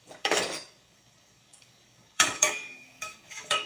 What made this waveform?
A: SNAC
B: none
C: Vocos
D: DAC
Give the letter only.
D